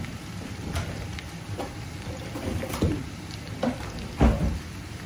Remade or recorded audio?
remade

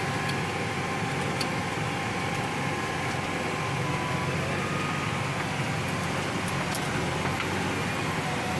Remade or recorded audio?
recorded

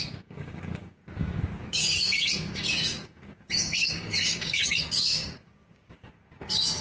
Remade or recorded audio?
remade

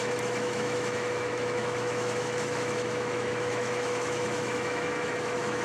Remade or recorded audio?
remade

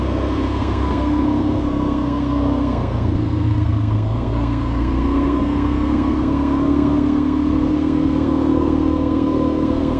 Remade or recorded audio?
remade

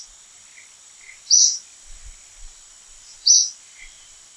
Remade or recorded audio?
recorded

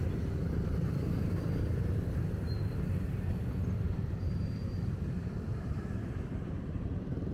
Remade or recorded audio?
remade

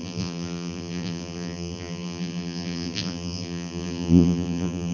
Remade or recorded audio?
remade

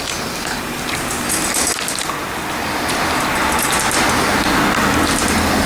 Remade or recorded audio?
recorded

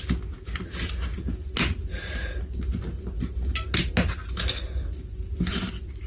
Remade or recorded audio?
recorded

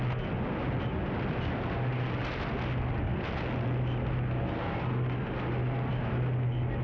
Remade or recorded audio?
recorded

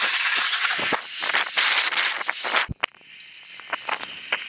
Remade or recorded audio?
recorded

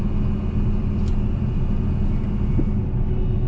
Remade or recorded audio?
recorded